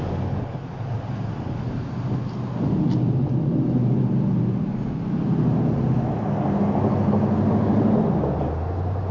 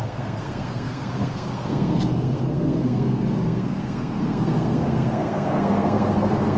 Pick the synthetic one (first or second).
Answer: second